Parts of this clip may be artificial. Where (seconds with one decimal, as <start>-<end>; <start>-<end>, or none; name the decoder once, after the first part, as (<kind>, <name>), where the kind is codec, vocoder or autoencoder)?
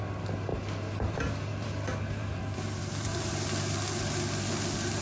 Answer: 1.5-3.3 (vocoder, BigVGAN v2)